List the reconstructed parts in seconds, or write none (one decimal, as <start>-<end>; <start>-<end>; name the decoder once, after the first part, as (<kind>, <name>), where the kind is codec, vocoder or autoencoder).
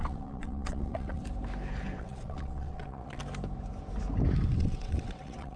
0.0-1.2 (vocoder, WaveNeXt); 2.0-3.2; 4.6-5.6